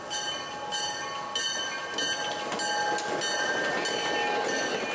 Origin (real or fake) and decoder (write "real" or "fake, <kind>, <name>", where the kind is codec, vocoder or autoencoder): real